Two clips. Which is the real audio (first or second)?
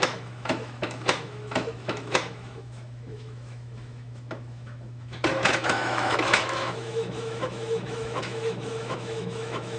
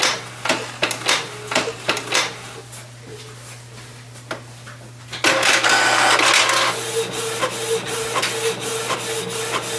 second